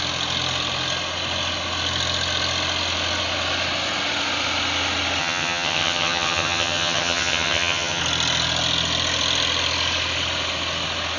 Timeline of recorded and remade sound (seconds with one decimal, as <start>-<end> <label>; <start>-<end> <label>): 0.0-5.2 recorded; 5.2-8.0 remade; 8.0-11.2 recorded